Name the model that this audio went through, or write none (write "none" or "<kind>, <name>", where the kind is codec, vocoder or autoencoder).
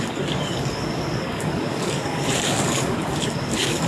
codec, DAC